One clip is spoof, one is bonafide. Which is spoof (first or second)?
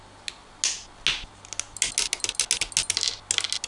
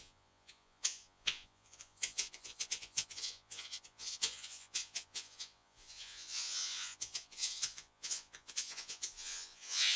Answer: second